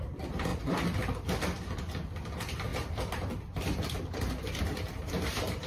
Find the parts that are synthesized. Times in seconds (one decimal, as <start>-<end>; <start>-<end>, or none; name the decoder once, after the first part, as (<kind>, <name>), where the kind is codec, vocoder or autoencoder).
none